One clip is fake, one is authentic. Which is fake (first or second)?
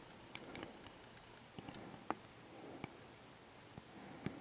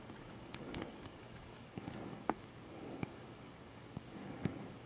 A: second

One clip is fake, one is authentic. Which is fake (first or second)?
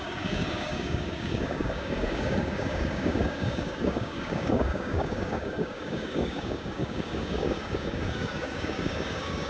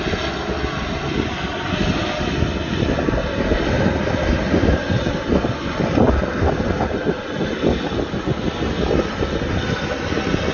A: first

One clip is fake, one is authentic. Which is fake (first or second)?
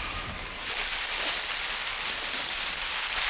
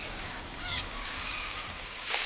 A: second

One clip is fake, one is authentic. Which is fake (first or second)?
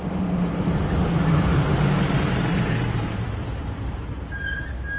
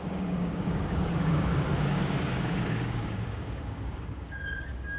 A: second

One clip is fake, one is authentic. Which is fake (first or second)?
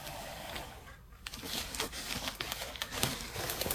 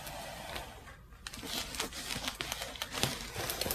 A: first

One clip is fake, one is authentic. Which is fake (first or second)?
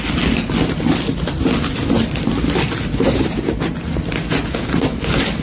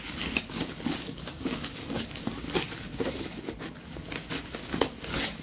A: second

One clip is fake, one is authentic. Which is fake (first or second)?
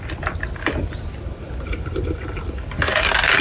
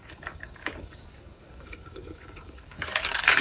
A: second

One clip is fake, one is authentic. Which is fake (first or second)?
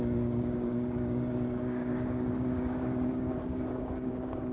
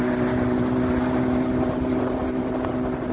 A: first